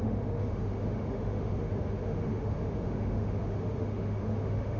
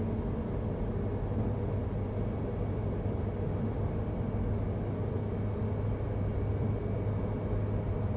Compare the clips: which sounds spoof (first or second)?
first